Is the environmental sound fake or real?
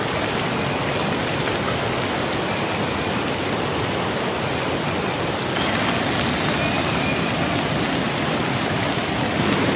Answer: real